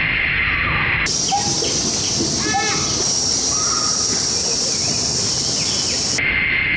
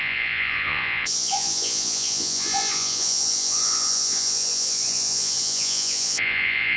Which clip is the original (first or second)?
first